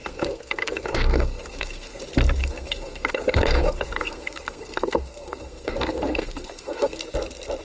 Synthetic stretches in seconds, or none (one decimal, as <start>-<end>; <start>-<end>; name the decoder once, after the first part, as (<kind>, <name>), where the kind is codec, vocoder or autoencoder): 0.0-2.0 (codec, SNAC); 2.4-7.0